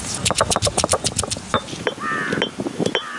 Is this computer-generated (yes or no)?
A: no